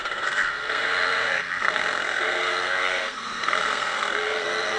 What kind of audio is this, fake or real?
fake